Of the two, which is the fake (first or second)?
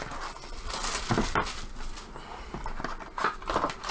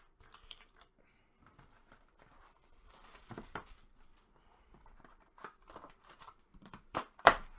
second